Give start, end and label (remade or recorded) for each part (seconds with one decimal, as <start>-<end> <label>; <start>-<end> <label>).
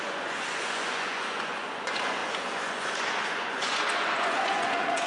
0.0-5.1 remade